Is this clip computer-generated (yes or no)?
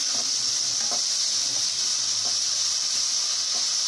no